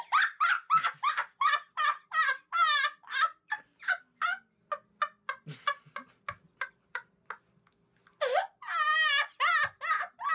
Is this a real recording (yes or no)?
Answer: yes